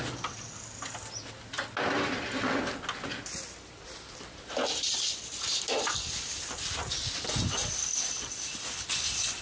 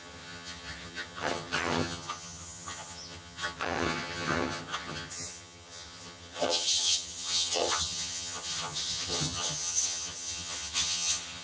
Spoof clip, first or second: second